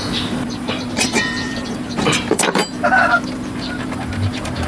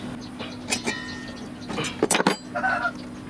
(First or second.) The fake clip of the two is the first